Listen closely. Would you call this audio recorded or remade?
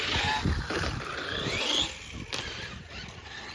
recorded